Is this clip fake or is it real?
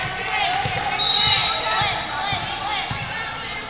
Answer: real